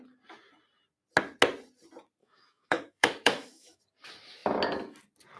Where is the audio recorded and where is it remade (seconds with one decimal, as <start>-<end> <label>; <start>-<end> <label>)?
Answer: 0.0-2.2 recorded; 2.2-3.8 remade; 3.8-5.4 recorded